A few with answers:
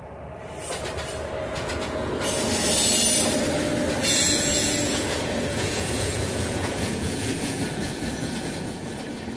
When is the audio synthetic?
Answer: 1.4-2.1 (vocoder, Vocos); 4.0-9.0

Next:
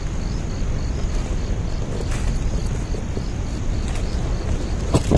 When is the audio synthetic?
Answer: none

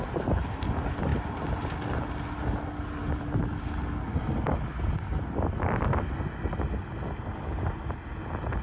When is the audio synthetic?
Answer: none

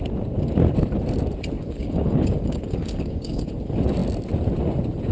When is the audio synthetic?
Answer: 1.6-3.5 (codec, DAC)